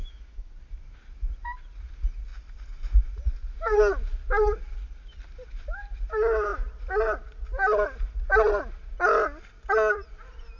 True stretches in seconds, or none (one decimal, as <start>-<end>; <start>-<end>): 0.5-10.6